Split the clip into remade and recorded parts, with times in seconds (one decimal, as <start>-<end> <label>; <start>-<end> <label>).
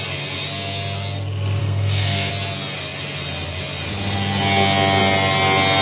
0.0-1.6 recorded; 1.6-2.3 remade; 2.3-5.8 recorded